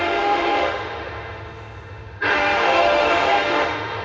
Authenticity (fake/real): fake